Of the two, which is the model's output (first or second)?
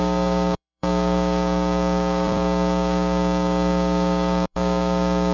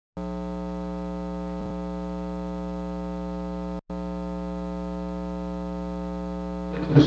first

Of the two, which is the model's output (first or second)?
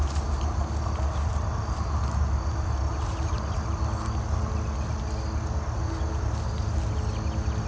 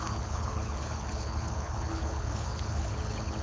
second